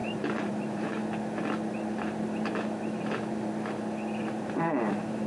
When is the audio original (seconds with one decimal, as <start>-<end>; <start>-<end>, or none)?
1.0-4.2